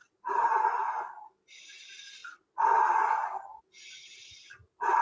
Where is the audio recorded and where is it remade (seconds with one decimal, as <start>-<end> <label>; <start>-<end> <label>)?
0.0-5.0 recorded